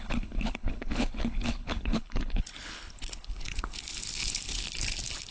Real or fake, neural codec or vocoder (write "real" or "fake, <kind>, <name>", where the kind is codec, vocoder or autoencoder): fake, codec, HILCodec